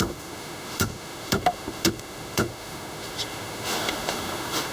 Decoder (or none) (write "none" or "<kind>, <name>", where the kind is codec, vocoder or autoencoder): autoencoder, DAC-VAE